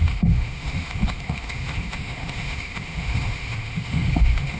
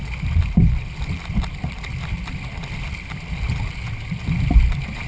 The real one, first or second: second